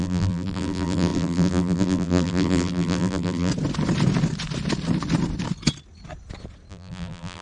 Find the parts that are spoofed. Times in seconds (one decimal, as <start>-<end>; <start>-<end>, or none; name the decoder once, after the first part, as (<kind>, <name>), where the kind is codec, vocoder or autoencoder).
0.0-3.5 (vocoder, BigVGAN v2); 6.7-7.4